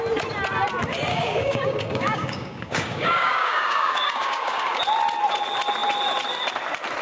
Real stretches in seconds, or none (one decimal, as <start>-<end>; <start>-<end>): 0.0-1.1; 4.8-7.0